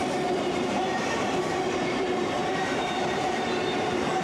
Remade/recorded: remade